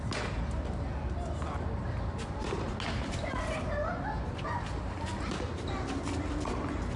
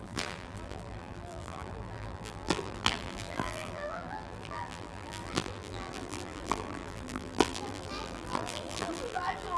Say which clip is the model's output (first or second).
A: second